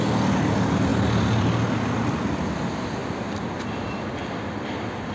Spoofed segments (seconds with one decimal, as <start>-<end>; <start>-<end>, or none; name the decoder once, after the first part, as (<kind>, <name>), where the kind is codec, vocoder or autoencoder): none